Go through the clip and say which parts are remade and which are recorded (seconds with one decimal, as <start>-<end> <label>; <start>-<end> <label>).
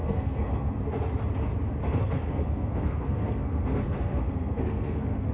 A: 0.0-0.8 remade; 0.8-2.0 recorded; 2.0-5.3 remade